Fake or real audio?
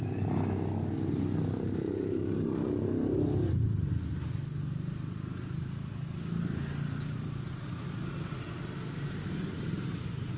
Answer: real